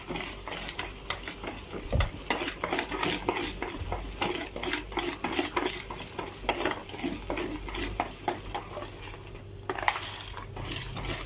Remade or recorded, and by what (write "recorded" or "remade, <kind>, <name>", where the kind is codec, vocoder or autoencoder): recorded